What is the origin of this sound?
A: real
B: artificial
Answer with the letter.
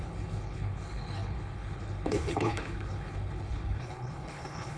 B